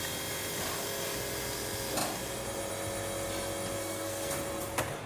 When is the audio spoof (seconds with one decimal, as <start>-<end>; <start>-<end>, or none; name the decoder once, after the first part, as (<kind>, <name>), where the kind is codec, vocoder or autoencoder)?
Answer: 3.8-4.4 (codec, SNAC)